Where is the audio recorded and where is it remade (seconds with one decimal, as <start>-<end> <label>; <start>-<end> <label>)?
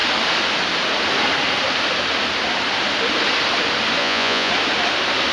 0.0-4.0 recorded; 4.0-4.5 remade; 4.5-5.3 recorded